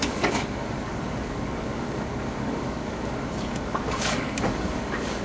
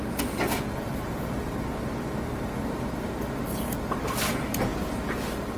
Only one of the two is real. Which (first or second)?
second